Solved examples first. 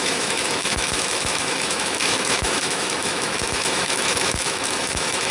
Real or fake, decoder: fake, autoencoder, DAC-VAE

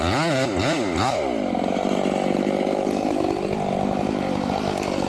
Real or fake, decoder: real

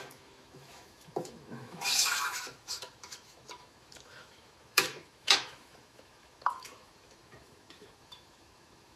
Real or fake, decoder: fake, autoencoder, DAC-VAE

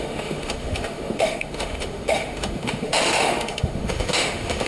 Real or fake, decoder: fake, autoencoder, DAC-VAE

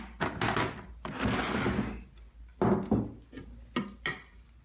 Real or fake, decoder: real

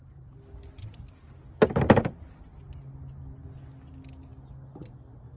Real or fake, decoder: real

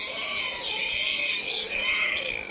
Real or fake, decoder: real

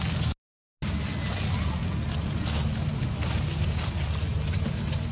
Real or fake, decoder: real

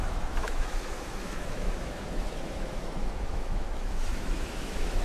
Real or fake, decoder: fake, autoencoder, DAC-VAE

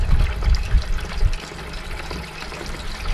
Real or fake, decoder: real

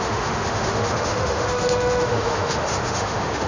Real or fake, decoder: fake, autoencoder, DAC-VAE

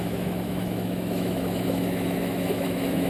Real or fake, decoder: fake, autoencoder, DAC-VAE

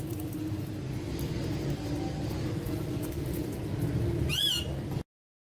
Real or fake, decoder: real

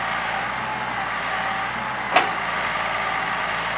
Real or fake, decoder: real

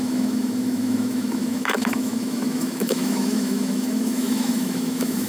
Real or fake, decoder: fake, autoencoder, DAC-VAE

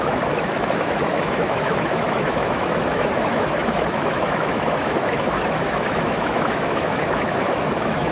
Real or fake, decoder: fake, autoencoder, DAC-VAE